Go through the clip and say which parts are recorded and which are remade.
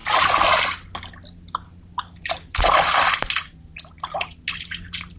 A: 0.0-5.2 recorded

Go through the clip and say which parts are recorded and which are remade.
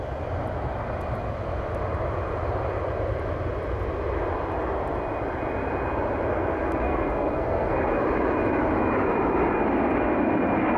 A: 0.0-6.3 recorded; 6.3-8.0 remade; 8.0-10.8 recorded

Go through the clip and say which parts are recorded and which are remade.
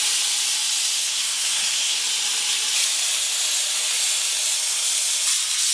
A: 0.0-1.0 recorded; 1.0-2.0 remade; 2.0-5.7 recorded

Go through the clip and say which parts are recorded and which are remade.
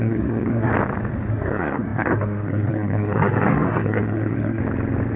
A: 0.0-0.7 remade; 0.7-1.3 recorded; 1.3-4.6 remade; 4.6-5.2 recorded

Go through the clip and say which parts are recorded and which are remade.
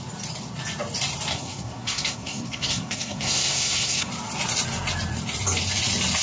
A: 0.0-1.3 recorded; 1.3-4.1 remade; 4.1-6.2 recorded